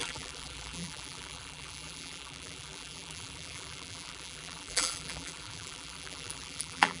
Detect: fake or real fake